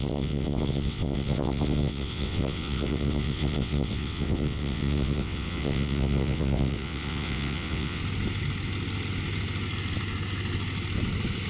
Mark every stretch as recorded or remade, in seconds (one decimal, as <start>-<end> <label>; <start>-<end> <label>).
0.0-8.0 remade; 8.0-11.5 recorded